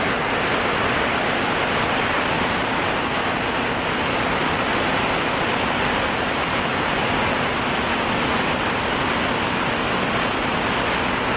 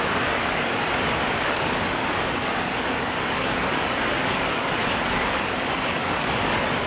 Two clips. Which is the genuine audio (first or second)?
first